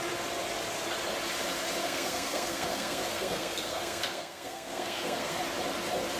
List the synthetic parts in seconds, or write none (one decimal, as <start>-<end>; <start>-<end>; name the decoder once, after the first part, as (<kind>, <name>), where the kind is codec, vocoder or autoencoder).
1.8-5.4 (codec, SNAC)